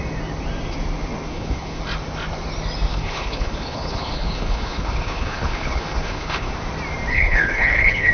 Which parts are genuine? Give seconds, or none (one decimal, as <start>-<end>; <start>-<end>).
0.0-1.3; 1.8-2.9; 6.5-7.1